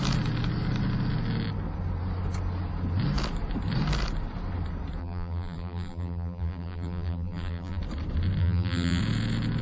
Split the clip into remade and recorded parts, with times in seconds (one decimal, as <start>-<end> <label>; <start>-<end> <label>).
0.0-5.0 recorded; 5.0-7.8 remade; 7.8-8.4 recorded; 8.4-9.0 remade; 9.0-9.6 recorded